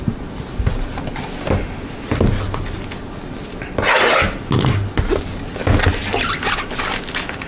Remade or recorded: recorded